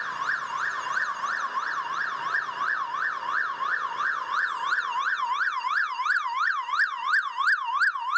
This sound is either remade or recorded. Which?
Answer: recorded